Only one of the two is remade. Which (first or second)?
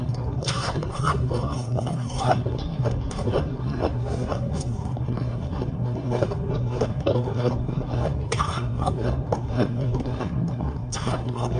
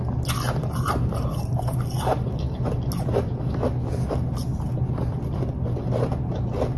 first